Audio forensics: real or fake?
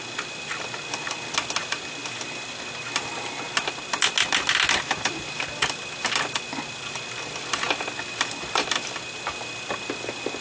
real